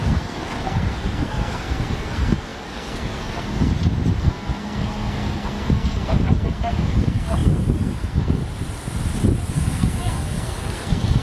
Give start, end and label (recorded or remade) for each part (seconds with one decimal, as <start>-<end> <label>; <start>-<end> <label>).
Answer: 0.0-3.7 remade; 3.7-4.2 recorded; 4.2-8.4 remade; 8.4-9.5 recorded; 9.5-11.2 remade